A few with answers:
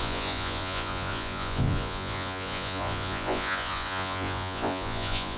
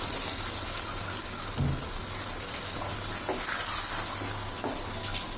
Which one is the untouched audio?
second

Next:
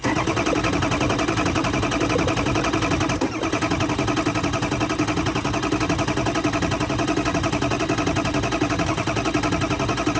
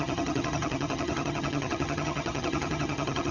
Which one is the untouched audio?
first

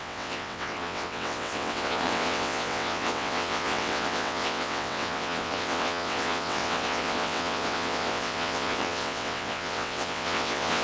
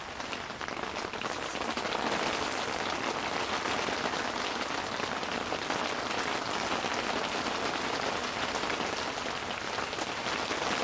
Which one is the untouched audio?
second